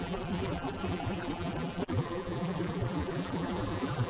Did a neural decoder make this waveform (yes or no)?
yes